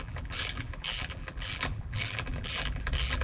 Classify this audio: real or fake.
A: fake